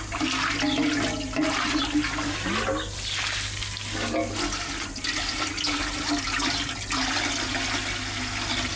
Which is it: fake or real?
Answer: real